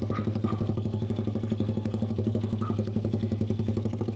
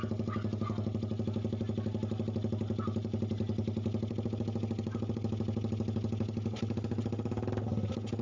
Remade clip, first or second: first